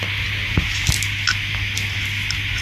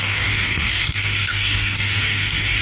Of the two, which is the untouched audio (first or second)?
first